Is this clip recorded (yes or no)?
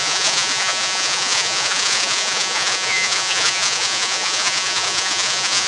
no